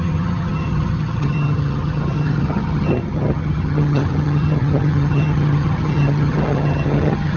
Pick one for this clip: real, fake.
fake